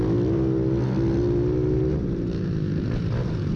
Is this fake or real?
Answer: real